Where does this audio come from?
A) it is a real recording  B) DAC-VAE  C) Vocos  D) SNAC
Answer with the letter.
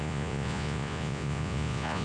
C